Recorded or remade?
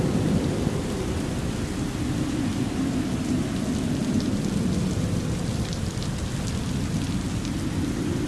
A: recorded